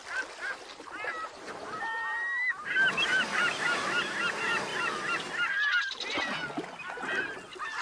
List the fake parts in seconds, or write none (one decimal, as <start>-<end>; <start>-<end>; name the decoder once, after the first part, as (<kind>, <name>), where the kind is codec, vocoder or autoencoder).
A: none